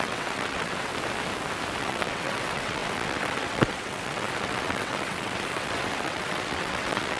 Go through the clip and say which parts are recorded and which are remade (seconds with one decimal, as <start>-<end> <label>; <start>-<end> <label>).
0.0-0.9 remade; 0.9-1.8 recorded; 1.8-7.2 remade